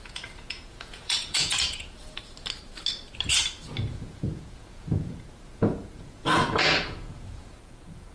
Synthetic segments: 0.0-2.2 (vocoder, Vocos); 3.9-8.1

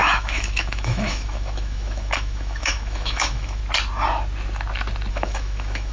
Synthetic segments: 0.0-3.6 (autoencoder, DAC-VAE); 5.1-5.9